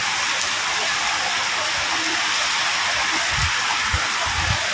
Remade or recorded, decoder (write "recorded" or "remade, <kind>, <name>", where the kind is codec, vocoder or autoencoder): recorded